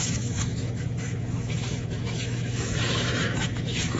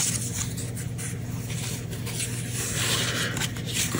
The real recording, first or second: second